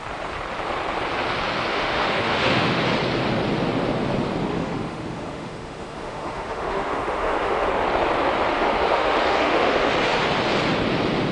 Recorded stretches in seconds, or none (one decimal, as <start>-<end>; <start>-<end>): 0.0-1.7; 2.8-4.5; 7.7-8.5; 9.9-11.3